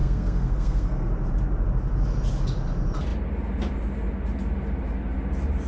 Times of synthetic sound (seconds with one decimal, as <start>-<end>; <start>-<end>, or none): 0.0-1.1